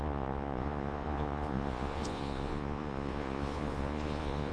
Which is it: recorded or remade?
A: remade